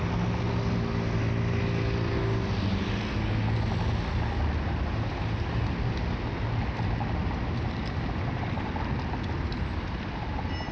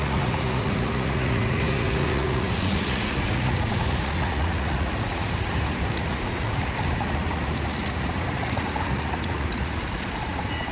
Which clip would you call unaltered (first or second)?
first